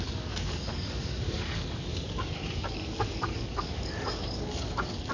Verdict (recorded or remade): remade